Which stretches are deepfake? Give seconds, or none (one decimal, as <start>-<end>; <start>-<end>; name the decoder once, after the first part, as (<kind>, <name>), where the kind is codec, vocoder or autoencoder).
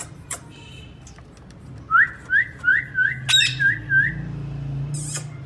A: 0.0-0.8 (vocoder, BigVGAN v2)